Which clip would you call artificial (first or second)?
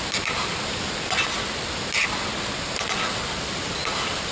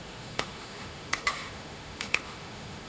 second